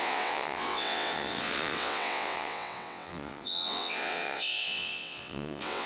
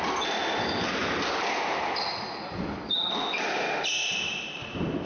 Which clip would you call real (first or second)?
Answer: second